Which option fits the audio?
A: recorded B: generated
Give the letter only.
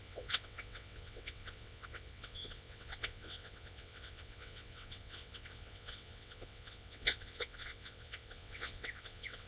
B